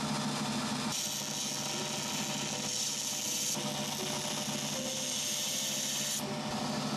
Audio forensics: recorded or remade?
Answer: recorded